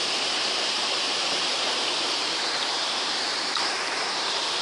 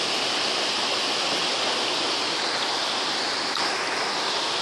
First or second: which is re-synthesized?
first